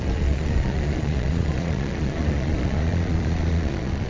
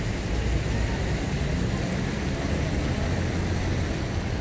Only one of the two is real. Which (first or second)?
second